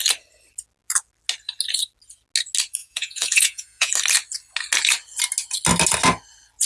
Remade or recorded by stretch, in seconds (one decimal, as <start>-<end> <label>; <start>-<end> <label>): 0.0-2.8 recorded; 2.8-3.9 remade; 3.9-6.7 recorded